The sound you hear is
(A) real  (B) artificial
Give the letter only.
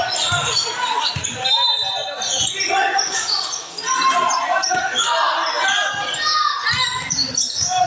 A